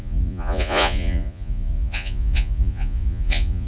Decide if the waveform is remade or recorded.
remade